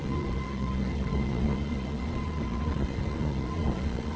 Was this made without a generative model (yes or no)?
no